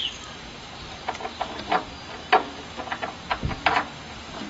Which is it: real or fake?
real